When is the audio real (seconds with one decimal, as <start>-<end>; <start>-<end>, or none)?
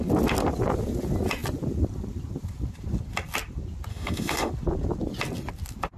0.0-3.9; 4.5-6.0